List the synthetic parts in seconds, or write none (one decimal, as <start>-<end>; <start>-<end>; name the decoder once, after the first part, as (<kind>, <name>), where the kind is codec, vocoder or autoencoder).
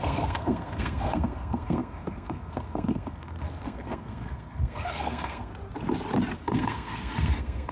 0.0-5.5 (codec, SNAC); 6.4-7.7